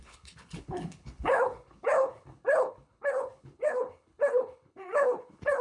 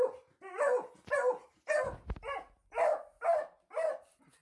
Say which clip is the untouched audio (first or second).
second